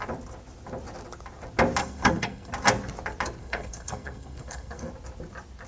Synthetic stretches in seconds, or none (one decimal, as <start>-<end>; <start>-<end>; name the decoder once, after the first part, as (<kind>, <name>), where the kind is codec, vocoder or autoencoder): 1.8-2.5 (codec, SNAC); 3.4-4.9